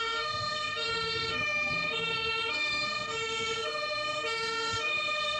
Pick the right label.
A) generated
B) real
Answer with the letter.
A